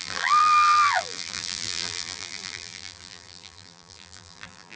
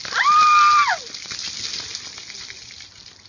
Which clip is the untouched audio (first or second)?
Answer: second